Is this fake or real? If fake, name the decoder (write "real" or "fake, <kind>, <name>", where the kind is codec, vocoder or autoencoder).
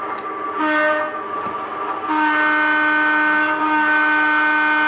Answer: real